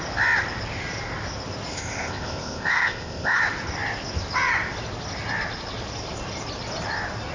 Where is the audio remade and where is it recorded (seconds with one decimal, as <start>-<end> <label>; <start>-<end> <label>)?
0.0-1.7 recorded; 1.7-3.4 remade; 3.4-7.3 recorded